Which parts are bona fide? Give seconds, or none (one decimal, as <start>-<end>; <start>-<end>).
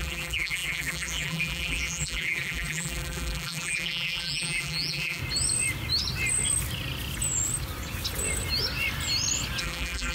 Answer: 5.2-9.6